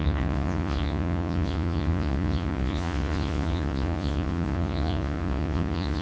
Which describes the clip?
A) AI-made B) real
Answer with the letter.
A